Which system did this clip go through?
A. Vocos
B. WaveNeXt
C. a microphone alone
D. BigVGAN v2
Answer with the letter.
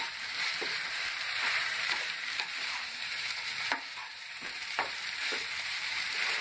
D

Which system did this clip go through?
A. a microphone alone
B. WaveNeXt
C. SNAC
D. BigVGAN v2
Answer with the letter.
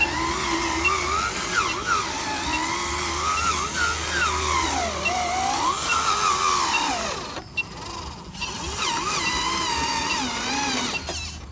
A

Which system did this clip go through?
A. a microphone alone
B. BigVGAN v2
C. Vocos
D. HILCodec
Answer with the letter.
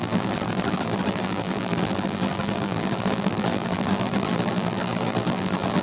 B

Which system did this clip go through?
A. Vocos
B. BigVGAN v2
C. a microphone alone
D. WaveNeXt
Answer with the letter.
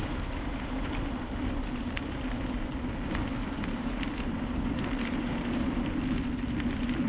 B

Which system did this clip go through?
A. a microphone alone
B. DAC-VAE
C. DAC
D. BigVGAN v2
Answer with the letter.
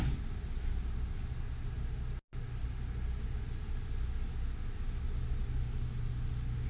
A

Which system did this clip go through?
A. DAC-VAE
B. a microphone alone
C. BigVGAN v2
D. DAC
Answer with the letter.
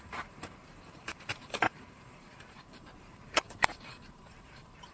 C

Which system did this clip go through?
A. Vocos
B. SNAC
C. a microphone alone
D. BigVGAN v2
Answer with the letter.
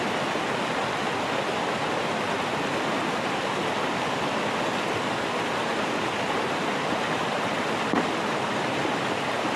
C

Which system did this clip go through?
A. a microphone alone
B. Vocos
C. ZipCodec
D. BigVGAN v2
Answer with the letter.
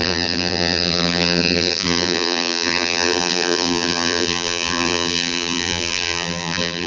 D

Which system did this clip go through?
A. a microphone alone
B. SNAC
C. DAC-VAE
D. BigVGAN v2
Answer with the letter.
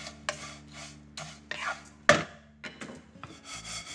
A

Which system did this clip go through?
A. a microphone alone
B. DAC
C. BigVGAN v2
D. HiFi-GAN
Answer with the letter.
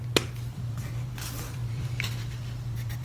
C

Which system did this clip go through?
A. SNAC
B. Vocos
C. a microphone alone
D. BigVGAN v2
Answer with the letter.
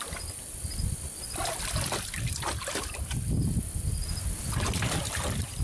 D